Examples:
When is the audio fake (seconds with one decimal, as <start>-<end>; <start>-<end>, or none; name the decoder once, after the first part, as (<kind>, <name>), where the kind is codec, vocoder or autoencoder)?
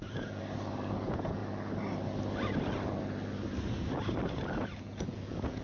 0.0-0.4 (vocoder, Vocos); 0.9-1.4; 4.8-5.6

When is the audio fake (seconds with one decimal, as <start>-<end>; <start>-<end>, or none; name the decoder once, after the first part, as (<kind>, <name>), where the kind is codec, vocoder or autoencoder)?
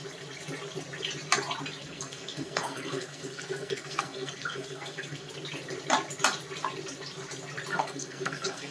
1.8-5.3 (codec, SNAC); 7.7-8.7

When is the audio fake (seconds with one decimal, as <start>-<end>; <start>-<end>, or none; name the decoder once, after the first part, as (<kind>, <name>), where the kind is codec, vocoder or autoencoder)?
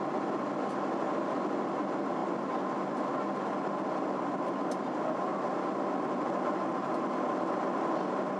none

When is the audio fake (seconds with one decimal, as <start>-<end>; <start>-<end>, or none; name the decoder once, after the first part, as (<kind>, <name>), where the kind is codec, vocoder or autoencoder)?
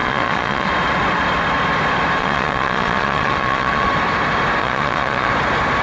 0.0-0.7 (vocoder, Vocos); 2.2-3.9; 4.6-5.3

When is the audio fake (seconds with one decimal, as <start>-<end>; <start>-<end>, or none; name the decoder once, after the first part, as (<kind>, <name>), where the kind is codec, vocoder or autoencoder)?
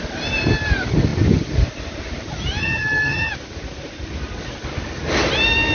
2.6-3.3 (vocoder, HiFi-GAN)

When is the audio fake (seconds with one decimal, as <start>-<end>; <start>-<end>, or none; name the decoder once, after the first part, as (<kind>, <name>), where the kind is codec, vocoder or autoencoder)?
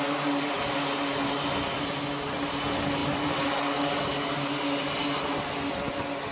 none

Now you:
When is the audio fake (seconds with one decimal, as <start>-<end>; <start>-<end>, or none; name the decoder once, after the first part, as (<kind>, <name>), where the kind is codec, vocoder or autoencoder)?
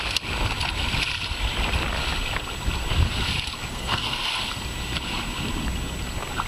3.7-4.3 (codec, SNAC)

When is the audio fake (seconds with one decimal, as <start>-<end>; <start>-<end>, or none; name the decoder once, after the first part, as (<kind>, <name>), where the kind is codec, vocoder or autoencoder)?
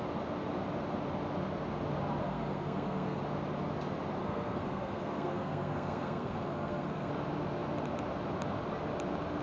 2.2-3.2 (codec, SNAC); 4.2-7.1